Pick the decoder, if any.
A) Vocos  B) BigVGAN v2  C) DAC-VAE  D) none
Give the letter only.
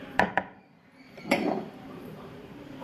B